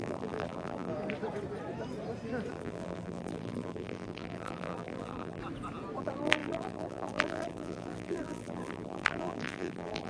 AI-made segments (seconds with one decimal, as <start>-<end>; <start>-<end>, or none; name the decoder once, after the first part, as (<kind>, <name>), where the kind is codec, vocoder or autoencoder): 0.0-0.9 (vocoder, BigVGAN v2); 2.5-5.4; 6.0-10.1